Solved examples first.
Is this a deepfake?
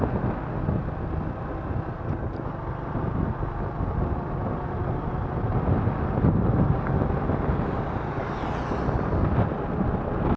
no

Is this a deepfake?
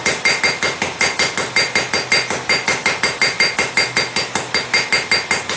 no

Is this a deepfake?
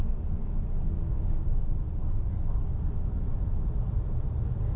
no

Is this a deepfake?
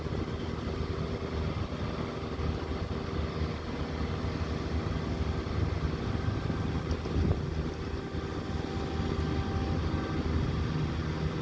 no